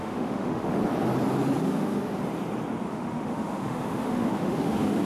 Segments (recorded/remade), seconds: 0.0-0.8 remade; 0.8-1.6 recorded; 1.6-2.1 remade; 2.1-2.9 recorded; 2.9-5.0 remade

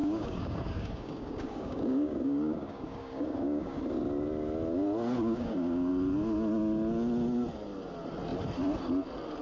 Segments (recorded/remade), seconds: 0.0-3.8 remade; 3.8-5.2 recorded; 5.2-5.9 remade; 5.9-9.4 recorded